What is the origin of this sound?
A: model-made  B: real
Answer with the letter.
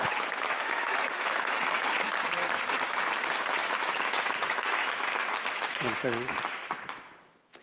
A